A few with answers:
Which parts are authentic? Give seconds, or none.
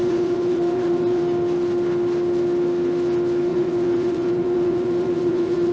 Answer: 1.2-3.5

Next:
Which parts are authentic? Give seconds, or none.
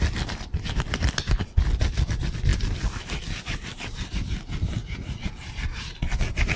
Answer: 0.0-4.8; 5.3-6.6